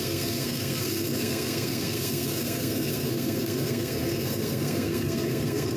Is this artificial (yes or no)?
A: yes